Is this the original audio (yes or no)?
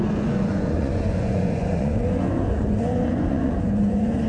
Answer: no